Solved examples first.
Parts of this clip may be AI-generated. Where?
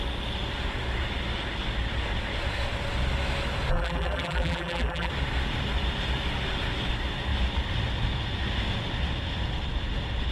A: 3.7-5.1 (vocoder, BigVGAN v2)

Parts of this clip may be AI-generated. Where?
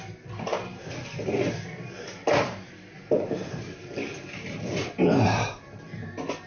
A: 2.2-6.1 (vocoder, BigVGAN v2)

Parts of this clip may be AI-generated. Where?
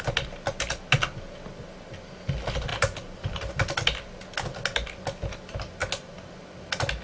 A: 2.7-3.5 (vocoder, BigVGAN v2)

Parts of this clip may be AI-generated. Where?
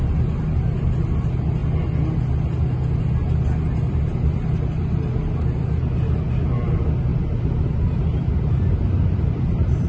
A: 7.1-9.9 (vocoder, BigVGAN v2)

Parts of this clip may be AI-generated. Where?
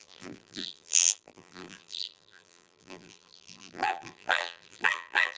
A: 0.0-5.4 (vocoder, BigVGAN v2)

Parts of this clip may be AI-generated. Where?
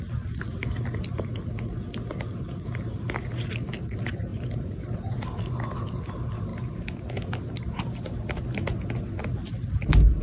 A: 4.3-5.2 (vocoder, BigVGAN v2)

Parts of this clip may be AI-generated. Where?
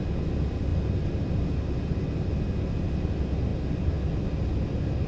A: none